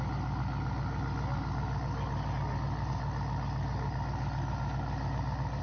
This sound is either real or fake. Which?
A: real